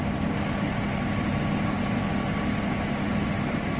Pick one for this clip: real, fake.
real